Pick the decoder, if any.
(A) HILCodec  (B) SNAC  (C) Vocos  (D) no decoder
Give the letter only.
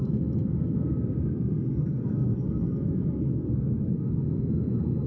B